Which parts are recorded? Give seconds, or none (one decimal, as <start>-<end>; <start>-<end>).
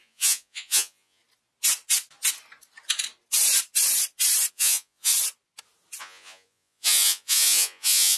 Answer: 1.2-4.5; 5.1-6.0